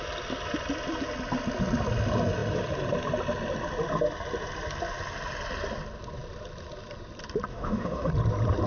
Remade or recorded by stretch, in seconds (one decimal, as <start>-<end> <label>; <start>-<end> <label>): 0.0-7.5 recorded; 7.5-8.1 remade; 8.1-8.7 recorded